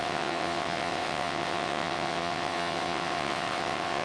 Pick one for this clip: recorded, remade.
remade